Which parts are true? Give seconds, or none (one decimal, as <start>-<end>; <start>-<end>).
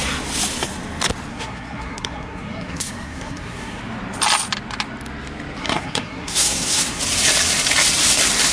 0.0-1.3; 3.8-5.6; 7.0-8.5